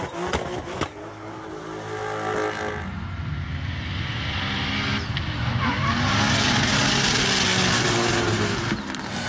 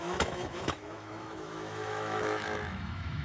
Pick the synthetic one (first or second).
second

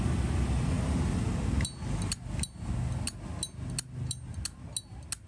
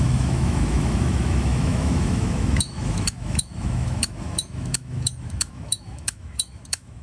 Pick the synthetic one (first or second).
second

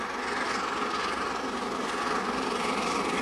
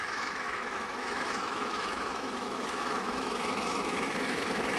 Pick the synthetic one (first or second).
second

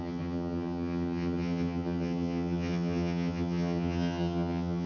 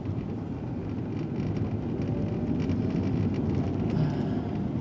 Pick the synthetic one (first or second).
first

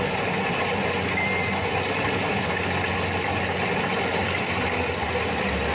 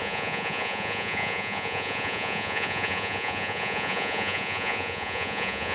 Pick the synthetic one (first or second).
second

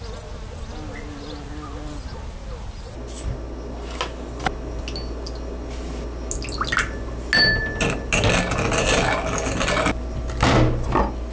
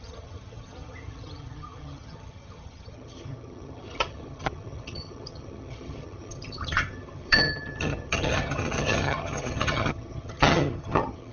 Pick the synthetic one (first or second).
second